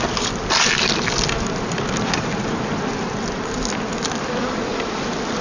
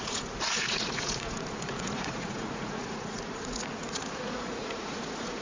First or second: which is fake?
second